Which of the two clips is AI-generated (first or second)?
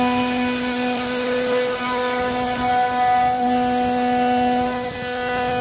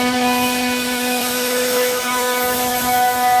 second